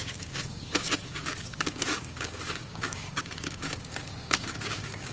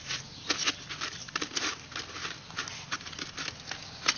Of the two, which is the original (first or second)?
second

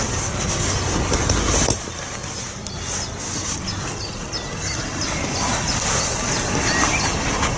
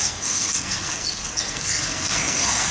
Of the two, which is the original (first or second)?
first